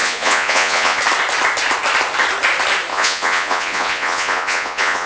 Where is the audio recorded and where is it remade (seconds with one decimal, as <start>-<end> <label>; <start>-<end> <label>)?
0.0-1.0 remade; 1.0-2.9 recorded; 2.9-5.1 remade